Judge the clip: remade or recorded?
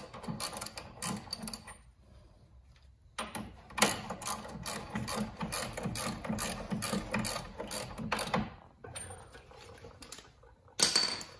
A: recorded